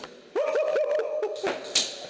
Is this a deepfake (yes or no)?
no